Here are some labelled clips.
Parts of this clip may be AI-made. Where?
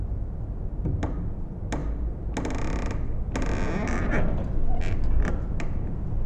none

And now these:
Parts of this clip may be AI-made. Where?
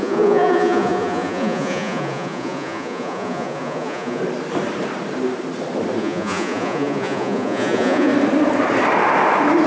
0.0-4.2; 6.0-8.1